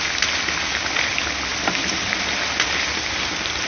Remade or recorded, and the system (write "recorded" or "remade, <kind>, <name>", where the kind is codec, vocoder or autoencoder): recorded